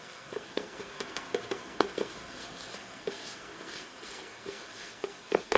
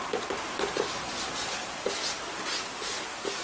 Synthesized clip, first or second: first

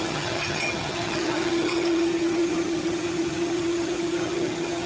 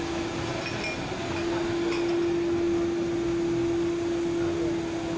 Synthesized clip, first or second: first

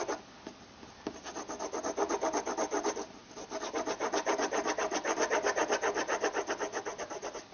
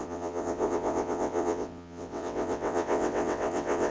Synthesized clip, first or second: second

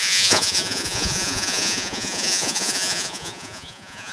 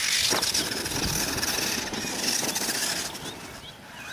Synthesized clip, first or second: first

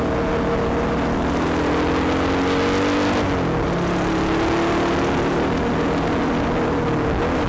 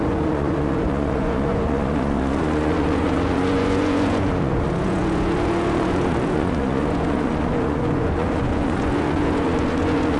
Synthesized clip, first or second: second